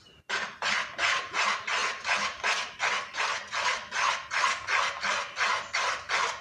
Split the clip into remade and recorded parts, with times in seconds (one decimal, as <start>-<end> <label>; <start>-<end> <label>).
0.0-6.4 recorded